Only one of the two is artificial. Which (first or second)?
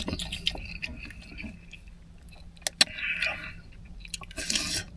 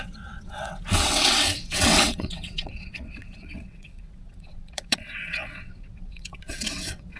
second